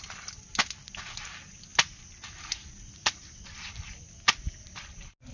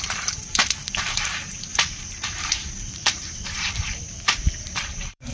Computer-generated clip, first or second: second